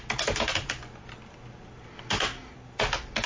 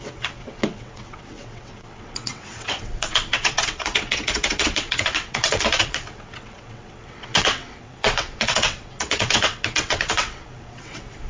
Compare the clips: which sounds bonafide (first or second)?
first